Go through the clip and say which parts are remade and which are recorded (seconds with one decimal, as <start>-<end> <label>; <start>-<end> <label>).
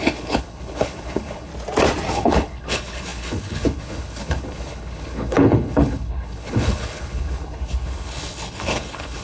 0.0-1.5 remade; 1.5-2.1 recorded; 2.1-9.2 remade